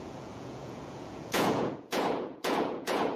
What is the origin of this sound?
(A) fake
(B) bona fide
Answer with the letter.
A